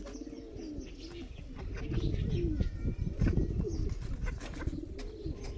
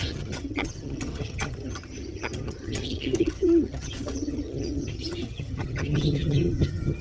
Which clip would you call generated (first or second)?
second